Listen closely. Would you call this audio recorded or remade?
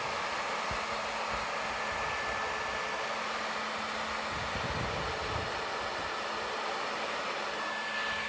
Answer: recorded